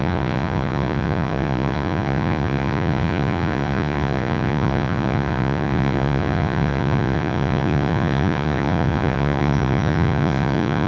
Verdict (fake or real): fake